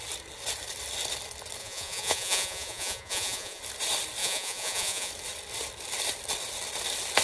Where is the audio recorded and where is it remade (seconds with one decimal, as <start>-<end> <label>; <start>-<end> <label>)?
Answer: 0.0-1.6 recorded; 1.6-3.6 remade; 3.6-4.2 recorded; 4.2-5.1 remade; 5.1-7.2 recorded